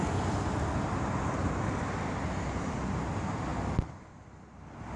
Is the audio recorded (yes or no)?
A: yes